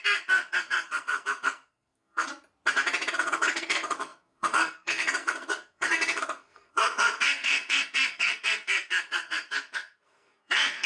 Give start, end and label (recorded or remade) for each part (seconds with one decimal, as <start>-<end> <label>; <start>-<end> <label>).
0.0-2.3 remade; 2.3-3.1 recorded; 3.1-10.9 remade